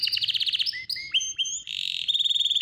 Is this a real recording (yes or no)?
yes